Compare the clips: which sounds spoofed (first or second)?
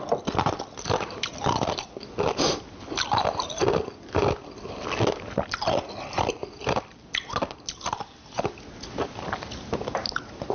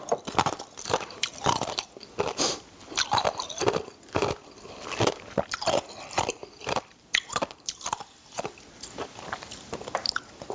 second